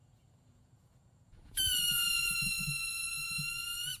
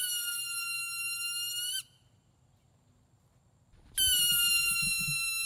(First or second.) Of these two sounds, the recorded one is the second